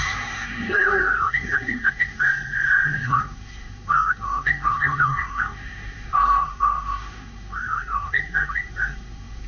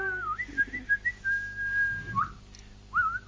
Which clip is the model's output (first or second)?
first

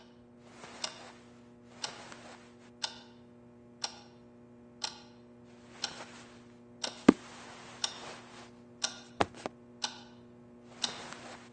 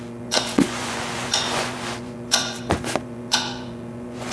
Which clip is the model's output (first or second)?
second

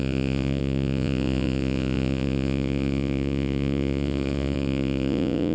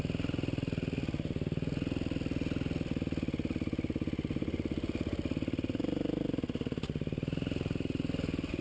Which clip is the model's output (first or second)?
first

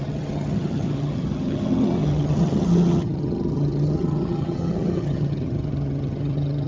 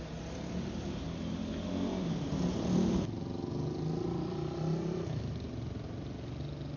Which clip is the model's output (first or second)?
first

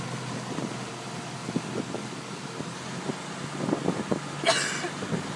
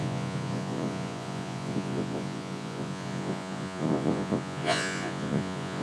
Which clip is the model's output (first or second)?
second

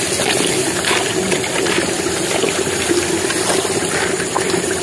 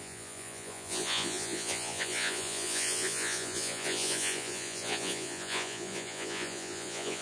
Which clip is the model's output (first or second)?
second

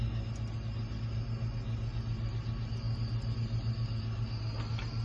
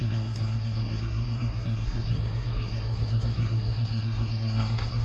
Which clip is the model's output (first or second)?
second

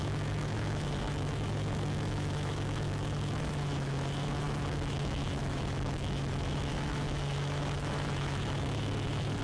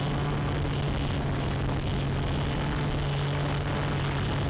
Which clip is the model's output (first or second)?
first